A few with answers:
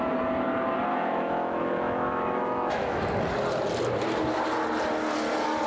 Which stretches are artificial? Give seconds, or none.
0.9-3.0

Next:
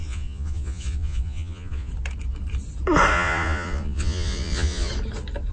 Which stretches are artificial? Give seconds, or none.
0.0-1.9; 3.1-4.9

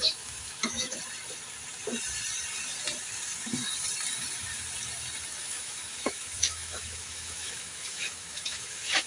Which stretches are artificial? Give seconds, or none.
0.0-1.0; 5.4-9.1

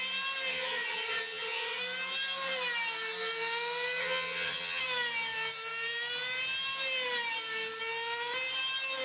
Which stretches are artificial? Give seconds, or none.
0.5-1.8; 4.0-4.8

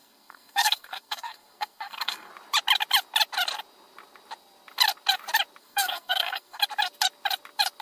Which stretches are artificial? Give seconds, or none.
0.0-2.3; 5.6-6.6

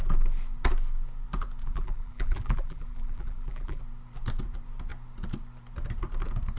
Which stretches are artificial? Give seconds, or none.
1.6-3.8